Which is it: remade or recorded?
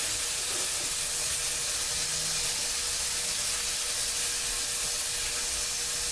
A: recorded